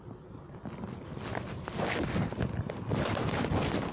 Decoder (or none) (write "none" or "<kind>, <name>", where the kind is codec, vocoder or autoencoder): none